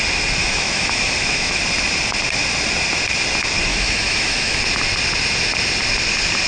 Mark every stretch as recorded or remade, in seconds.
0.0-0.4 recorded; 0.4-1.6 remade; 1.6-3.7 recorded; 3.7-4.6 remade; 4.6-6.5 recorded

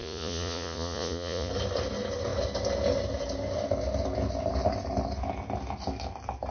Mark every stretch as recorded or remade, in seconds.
0.0-1.5 remade; 1.5-6.5 recorded

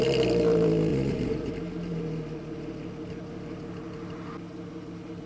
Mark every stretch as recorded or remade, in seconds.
0.0-0.9 recorded; 0.9-1.5 remade; 1.5-5.3 recorded

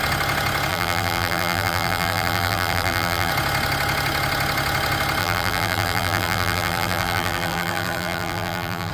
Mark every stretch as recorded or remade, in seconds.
0.0-0.7 recorded; 0.7-3.3 remade; 3.3-5.2 recorded; 5.2-8.9 remade

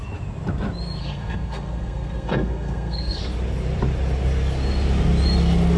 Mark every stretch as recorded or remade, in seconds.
0.0-1.0 recorded; 1.0-3.2 remade; 3.2-5.8 recorded

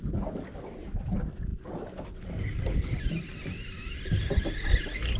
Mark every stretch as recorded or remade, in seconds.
0.0-5.2 recorded

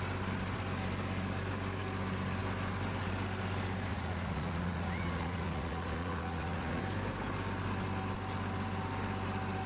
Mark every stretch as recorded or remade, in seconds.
0.0-3.9 recorded; 3.9-6.8 remade; 6.8-9.7 recorded

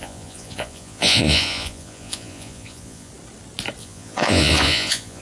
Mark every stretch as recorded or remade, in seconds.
0.0-3.1 remade; 3.1-3.8 recorded; 3.8-5.2 remade